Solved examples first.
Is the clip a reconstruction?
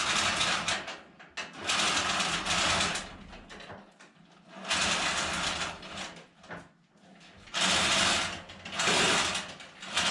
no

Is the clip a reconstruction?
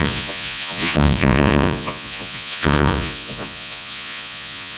yes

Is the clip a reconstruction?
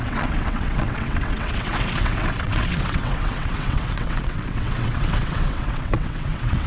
yes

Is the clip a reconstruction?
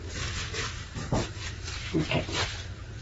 no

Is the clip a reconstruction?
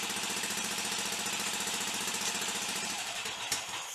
yes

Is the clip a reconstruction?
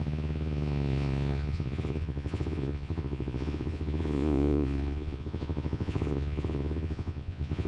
yes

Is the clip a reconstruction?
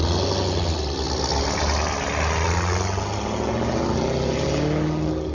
no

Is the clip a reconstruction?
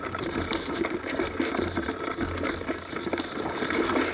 no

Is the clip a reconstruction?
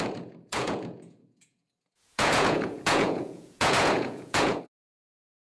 yes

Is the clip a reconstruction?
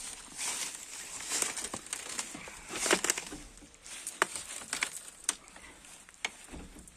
no